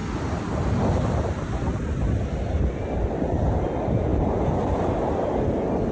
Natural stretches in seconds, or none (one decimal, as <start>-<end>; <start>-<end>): 0.0-5.9